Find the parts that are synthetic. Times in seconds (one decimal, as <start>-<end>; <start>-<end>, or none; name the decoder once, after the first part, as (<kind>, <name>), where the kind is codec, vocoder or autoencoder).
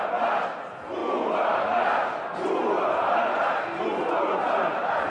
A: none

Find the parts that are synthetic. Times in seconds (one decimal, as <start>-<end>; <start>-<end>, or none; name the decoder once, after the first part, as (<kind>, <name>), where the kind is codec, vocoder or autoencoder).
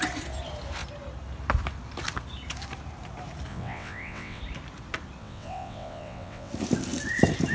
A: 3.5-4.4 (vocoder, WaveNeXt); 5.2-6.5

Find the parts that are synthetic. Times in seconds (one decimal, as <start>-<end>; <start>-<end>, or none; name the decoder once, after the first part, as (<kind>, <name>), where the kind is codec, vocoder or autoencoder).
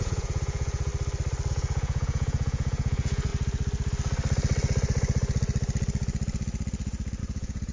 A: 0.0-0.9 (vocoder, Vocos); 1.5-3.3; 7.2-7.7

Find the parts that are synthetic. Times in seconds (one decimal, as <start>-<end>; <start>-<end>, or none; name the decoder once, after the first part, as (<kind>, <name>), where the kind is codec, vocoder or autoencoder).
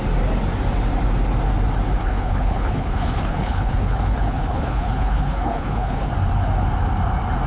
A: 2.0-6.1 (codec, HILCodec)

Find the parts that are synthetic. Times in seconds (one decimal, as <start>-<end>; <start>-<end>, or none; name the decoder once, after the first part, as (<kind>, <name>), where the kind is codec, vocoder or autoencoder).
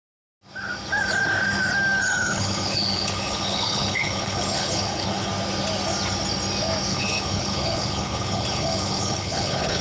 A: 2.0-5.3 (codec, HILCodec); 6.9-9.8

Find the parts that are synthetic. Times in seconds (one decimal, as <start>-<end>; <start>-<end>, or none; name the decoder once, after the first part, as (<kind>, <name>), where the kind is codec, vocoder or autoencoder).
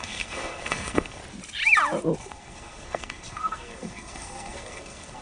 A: 0.0-1.2 (codec, SNAC); 2.2-5.2